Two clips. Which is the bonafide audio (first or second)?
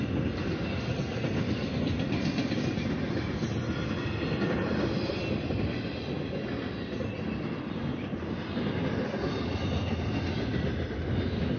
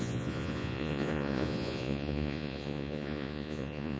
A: first